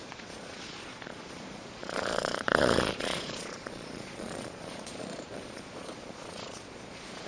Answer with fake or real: fake